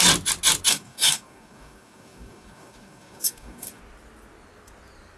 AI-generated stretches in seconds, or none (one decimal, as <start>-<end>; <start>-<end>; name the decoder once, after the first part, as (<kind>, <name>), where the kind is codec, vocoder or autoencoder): 0.7-3.8 (codec, DAC)